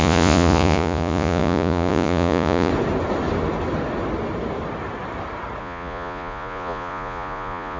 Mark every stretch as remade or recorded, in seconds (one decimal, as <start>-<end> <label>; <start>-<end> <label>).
0.0-2.7 remade; 2.7-5.6 recorded; 5.6-7.8 remade